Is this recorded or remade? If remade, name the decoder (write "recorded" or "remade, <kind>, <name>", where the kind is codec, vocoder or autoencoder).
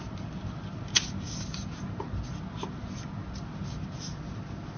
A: recorded